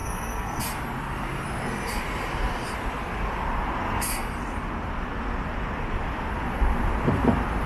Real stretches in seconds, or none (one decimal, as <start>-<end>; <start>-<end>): 0.6-7.7